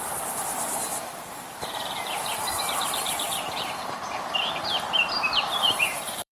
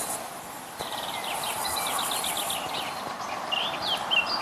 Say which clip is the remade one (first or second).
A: first